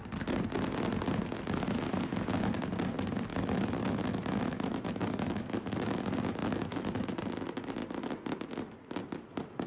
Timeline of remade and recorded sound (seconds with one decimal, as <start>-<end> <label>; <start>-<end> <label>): 0.0-3.3 recorded; 3.3-5.9 remade; 5.9-6.4 recorded; 6.4-7.2 remade; 7.2-9.7 recorded